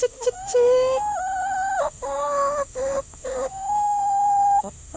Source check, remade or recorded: remade